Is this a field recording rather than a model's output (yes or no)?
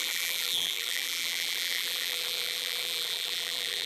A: no